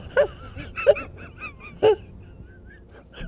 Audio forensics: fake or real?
real